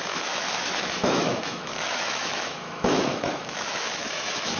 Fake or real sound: fake